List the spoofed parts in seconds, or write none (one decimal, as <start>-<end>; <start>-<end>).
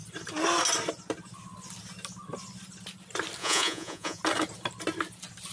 3.4-4.2